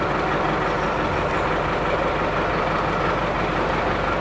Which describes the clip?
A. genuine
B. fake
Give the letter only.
A